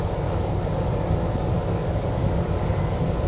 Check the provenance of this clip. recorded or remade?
remade